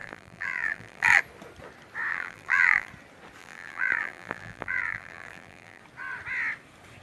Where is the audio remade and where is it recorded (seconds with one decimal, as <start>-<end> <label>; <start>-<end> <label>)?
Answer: 0.0-1.2 remade; 1.2-2.1 recorded; 2.1-2.9 remade; 2.9-3.4 recorded; 3.4-5.8 remade; 5.8-7.0 recorded

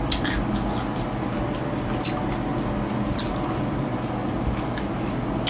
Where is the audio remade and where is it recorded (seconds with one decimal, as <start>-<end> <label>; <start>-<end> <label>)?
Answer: 0.0-5.5 recorded

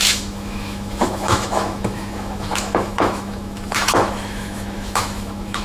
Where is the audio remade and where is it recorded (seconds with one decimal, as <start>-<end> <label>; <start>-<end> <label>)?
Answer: 0.0-5.6 remade

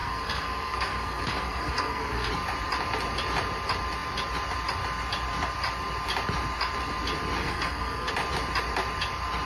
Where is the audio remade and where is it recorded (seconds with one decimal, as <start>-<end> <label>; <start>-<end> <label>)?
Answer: 0.0-2.3 remade; 2.3-7.4 recorded; 7.4-8.1 remade; 8.1-9.5 recorded

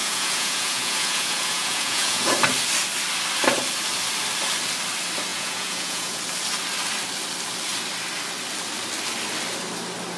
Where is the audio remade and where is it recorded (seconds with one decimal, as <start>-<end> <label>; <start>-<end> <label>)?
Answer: 0.0-2.3 remade; 2.3-5.3 recorded; 5.3-6.2 remade; 6.2-10.2 recorded

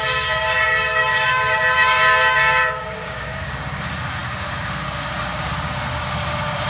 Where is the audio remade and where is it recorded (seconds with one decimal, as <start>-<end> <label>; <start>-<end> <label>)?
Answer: 0.0-6.7 remade

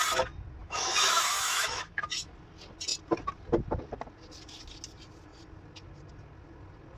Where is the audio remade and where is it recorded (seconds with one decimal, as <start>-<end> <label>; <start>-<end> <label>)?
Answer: 0.0-0.6 recorded; 0.6-2.3 remade; 2.3-7.0 recorded